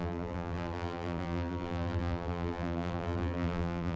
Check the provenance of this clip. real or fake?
fake